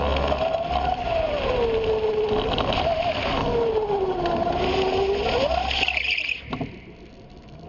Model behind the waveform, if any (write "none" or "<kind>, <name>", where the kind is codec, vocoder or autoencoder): none